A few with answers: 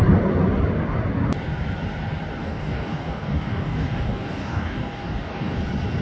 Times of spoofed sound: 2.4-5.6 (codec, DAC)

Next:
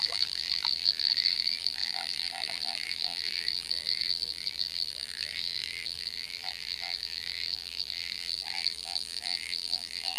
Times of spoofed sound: 0.0-10.2 (vocoder, BigVGAN v2)

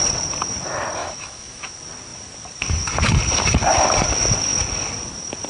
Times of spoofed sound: 1.0-1.7 (autoencoder, DAC-VAE)